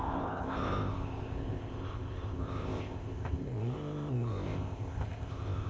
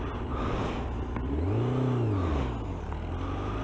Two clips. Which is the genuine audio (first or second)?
second